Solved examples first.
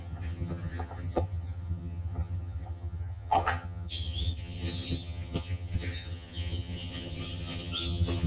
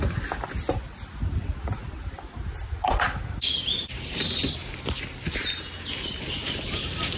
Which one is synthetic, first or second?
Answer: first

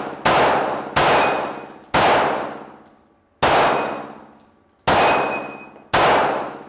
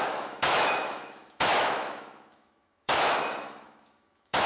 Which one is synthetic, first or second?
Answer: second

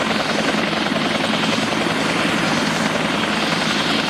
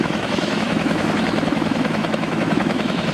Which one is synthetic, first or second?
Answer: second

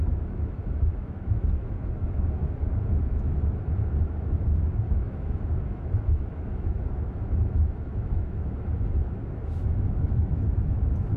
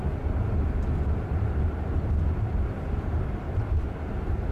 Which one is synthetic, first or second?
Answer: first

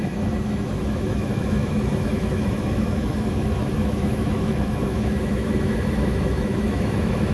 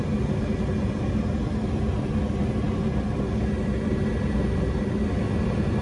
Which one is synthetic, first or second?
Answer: first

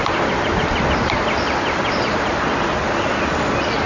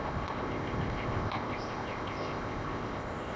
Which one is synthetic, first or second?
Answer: second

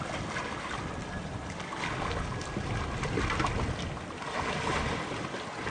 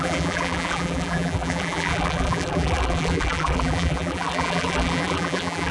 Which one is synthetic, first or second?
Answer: second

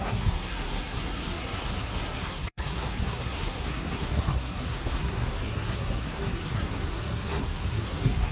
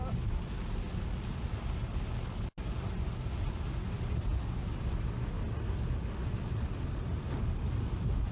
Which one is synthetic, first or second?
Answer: first